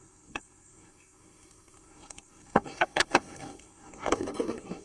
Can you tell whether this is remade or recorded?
remade